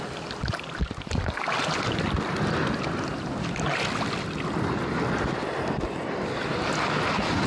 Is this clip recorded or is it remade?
recorded